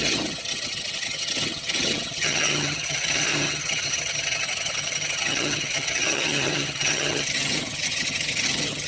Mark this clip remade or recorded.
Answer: remade